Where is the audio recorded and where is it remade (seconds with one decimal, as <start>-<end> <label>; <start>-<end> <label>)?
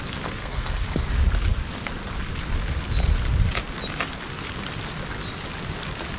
0.0-0.4 recorded; 0.4-1.1 remade; 1.1-6.2 recorded